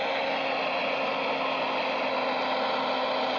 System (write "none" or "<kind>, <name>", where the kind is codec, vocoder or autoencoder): none